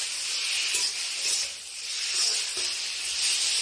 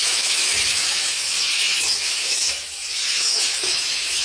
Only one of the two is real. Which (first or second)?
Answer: first